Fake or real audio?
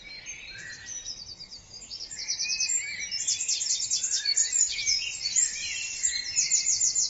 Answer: fake